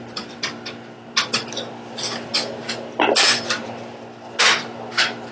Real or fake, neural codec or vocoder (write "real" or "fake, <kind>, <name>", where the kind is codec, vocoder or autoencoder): real